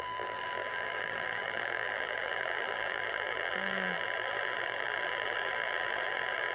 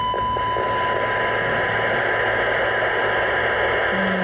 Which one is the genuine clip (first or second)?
second